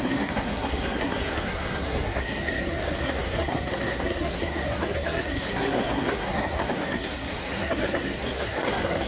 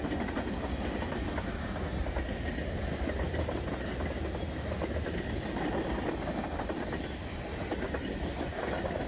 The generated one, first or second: first